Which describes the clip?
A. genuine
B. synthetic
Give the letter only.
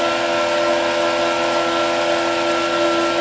A